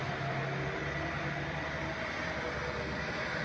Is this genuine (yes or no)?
yes